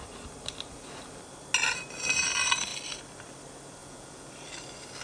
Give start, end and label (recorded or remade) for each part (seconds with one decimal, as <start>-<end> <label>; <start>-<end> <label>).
0.0-3.8 recorded; 3.8-4.3 remade; 4.3-5.0 recorded